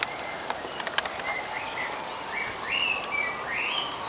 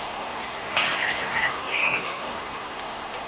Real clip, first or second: first